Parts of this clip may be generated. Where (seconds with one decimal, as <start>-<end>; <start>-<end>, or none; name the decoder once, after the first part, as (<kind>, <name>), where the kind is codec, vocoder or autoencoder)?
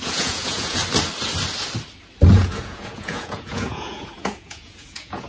0.0-0.8 (vocoder, Vocos); 2.3-5.3